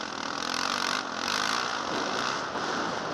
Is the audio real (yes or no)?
yes